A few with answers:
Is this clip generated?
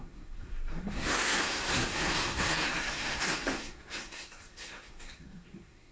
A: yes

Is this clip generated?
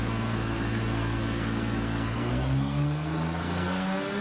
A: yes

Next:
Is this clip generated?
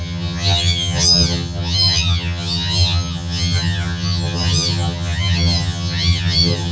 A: yes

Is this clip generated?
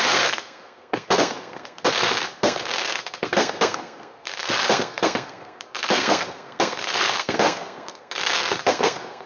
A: yes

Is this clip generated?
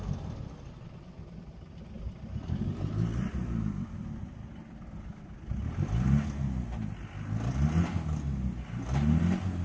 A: no